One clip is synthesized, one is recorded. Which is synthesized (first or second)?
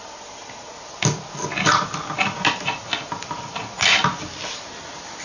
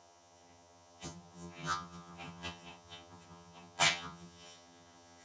second